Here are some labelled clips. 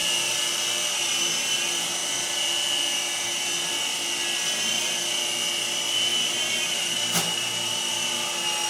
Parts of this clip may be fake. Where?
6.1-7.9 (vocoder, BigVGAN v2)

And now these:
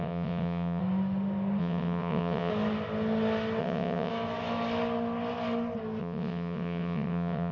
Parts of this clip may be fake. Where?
0.0-0.8 (vocoder, WaveNeXt); 1.6-2.5; 3.6-4.1; 6.0-7.5

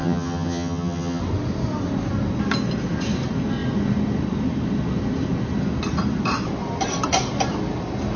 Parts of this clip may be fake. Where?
0.0-1.2 (vocoder, HiFi-GAN)

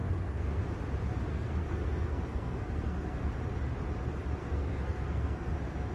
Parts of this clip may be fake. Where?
0.0-0.6 (codec, SNAC); 1.3-3.3; 4.4-5.5

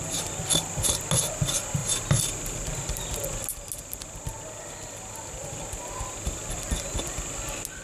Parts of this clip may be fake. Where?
none

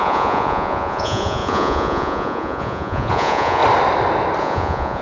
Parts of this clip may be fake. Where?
0.0-3.6 (vocoder, Vocos); 4.4-5.0

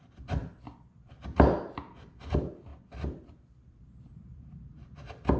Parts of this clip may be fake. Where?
none

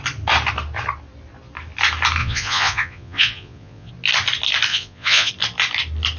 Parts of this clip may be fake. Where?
2.2-3.9 (vocoder, Vocos); 4.7-5.3